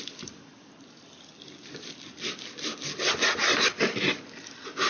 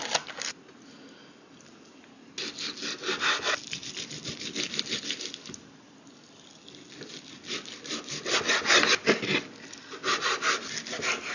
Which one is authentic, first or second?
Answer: second